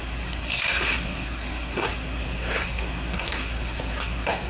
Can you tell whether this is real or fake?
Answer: fake